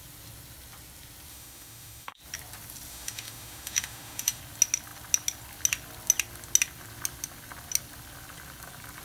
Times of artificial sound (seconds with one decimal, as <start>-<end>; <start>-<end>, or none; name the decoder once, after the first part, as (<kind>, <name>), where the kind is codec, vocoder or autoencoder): 1.3-2.2 (autoencoder, DAC-VAE); 2.9-4.4